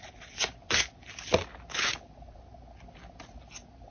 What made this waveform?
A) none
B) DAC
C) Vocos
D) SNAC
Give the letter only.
A